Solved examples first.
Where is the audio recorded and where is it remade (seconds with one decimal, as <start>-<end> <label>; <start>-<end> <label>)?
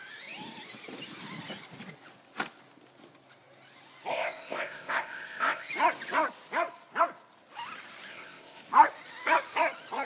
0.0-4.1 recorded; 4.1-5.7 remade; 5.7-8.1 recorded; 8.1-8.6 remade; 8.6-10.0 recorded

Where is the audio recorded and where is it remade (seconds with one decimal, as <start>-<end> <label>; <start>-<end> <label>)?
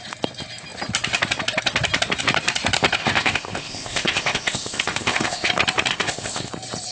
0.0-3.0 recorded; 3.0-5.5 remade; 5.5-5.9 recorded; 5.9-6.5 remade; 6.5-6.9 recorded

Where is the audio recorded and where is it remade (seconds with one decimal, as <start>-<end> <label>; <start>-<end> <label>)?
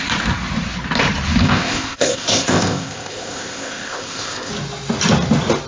0.0-1.4 recorded; 1.4-4.5 remade; 4.5-5.7 recorded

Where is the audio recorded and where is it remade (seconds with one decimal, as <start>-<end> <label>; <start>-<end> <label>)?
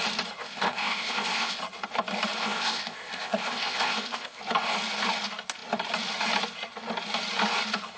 0.0-0.4 recorded; 0.4-1.6 remade; 1.6-2.4 recorded; 2.4-4.4 remade; 4.4-8.0 recorded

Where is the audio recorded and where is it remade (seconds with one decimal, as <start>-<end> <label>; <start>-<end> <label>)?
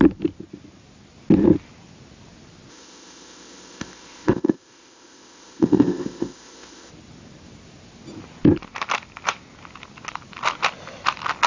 0.0-2.7 recorded; 2.7-6.9 remade; 6.9-11.5 recorded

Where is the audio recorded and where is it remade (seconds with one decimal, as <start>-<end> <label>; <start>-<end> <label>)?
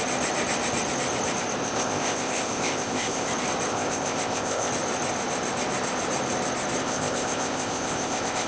0.0-1.6 recorded; 1.6-3.3 remade; 3.3-3.7 recorded; 3.7-4.7 remade; 4.7-6.8 recorded; 6.8-8.5 remade